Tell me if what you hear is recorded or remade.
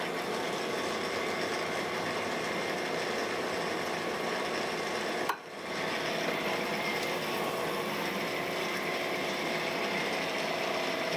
recorded